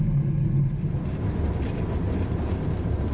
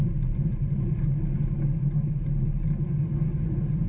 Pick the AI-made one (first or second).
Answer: second